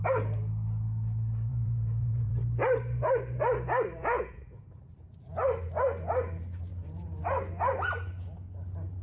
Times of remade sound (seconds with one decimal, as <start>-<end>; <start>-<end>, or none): 1.5-2.4; 4.0-4.8; 6.7-7.2